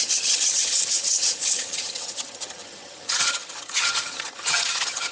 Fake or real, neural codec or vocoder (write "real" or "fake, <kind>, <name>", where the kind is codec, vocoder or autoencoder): fake, vocoder, HiFi-GAN